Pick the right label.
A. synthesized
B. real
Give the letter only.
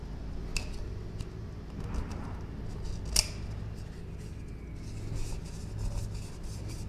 B